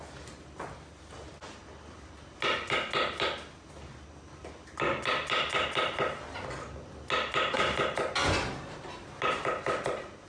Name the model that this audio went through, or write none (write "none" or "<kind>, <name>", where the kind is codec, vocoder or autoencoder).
none